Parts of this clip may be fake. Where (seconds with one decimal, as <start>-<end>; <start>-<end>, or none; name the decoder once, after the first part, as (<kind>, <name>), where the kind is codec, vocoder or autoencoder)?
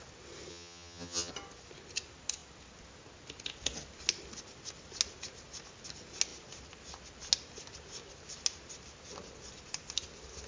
0.5-1.3 (vocoder, HiFi-GAN)